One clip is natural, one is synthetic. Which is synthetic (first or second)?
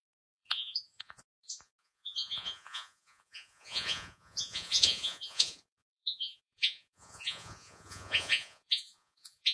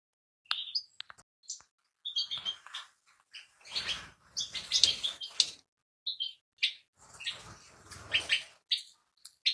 first